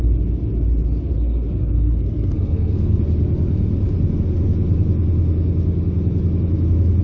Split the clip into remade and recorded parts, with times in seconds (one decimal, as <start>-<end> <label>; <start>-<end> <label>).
0.0-1.1 recorded; 1.1-3.0 remade; 3.0-7.0 recorded